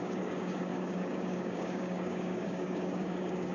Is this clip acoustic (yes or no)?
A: no